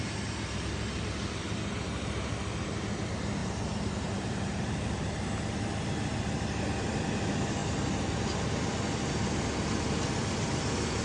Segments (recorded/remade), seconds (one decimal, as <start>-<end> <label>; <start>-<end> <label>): 0.0-3.4 recorded; 3.4-4.9 remade; 4.9-11.0 recorded